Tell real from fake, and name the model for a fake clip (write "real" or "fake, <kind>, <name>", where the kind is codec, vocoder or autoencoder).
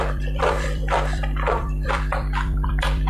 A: fake, vocoder, BigVGAN v2